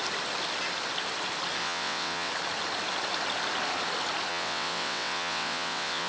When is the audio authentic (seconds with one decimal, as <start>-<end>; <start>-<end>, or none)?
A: 0.0-1.6; 2.3-4.3